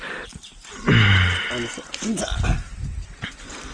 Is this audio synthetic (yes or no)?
no